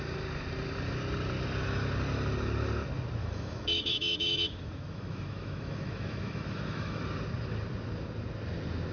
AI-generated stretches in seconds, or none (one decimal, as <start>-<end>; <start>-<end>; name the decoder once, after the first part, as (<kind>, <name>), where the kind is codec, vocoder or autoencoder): 3.2-7.0 (autoencoder, DAC-VAE)